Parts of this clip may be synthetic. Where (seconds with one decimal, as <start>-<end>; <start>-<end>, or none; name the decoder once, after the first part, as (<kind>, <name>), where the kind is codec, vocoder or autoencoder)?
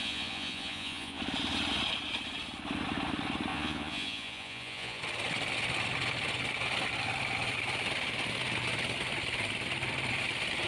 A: 0.0-1.2 (vocoder, Vocos); 3.5-5.0